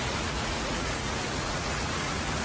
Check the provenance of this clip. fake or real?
fake